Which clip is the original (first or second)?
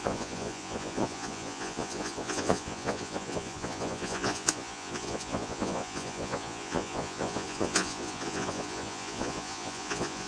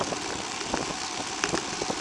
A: second